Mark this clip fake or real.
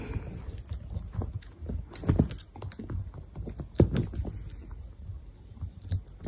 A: real